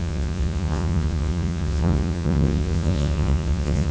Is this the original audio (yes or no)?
no